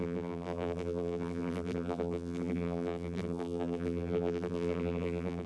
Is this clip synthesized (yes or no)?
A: yes